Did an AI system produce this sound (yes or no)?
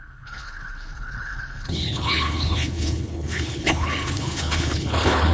yes